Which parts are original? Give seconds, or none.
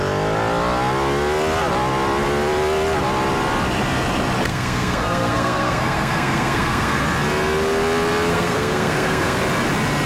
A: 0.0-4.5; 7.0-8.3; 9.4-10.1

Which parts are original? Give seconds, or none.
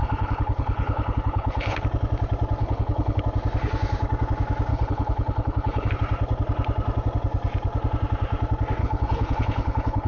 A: 1.8-2.6; 3.2-4.7; 5.9-8.8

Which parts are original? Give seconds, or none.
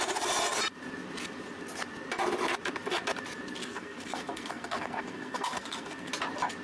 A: 0.0-3.6; 6.1-6.6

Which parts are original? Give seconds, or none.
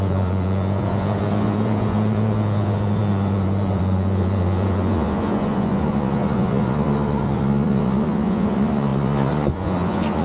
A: none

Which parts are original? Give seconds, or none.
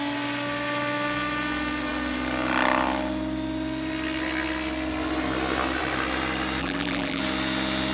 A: 0.0-6.6; 7.2-7.9